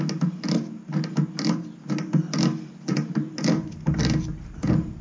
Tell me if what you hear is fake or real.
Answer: real